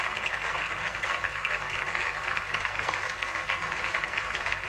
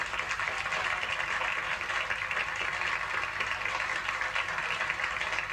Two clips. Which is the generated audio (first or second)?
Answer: first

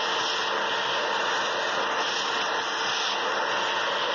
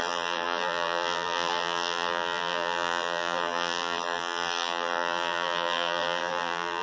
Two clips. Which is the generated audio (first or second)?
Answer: second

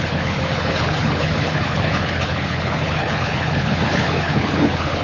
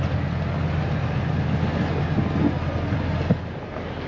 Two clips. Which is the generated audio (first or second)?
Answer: first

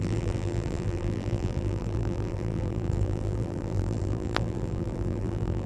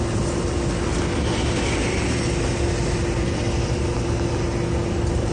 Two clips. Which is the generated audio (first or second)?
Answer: first